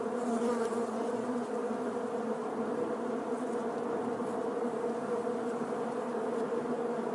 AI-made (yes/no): no